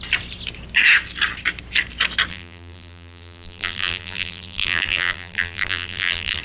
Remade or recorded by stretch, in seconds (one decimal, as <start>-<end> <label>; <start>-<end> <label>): 0.0-2.3 recorded; 2.3-6.4 remade